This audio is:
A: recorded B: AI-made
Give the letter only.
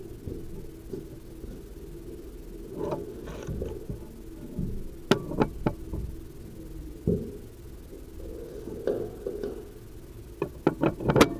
A